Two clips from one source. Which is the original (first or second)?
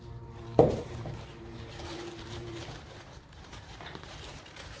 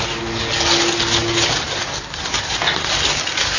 second